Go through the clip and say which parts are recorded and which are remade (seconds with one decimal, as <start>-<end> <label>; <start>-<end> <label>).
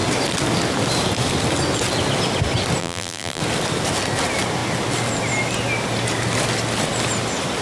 0.0-2.8 recorded; 2.8-3.4 remade; 3.4-7.6 recorded